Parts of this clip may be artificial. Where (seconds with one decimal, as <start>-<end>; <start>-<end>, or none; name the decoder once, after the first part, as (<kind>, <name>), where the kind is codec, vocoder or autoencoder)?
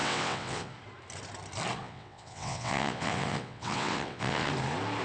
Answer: 0.0-0.7 (vocoder, WaveNeXt); 1.8-4.5